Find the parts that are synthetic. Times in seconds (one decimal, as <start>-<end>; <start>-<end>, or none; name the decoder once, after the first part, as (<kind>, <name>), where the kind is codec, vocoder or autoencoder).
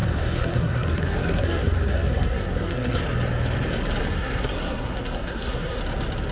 0.0-3.0 (codec, SNAC); 4.0-5.8